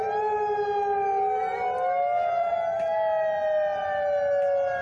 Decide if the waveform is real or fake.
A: real